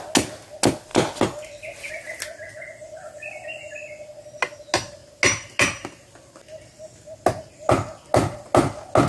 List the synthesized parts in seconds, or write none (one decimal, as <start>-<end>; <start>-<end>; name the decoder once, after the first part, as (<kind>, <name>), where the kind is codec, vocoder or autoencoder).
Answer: none